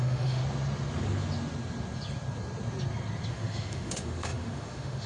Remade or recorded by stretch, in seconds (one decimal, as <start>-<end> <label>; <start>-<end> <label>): 0.0-0.4 remade; 0.4-3.3 recorded; 3.3-5.1 remade